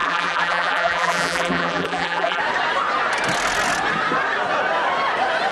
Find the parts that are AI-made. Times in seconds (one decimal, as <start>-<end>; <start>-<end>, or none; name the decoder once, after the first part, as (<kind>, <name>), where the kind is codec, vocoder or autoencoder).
0.0-2.4 (vocoder, BigVGAN v2)